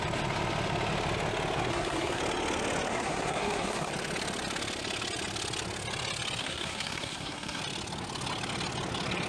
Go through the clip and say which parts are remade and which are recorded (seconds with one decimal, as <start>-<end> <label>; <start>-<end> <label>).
0.0-1.7 recorded; 1.7-2.2 remade; 2.2-2.9 recorded; 2.9-3.9 remade; 3.9-6.4 recorded; 6.4-7.6 remade; 7.6-9.3 recorded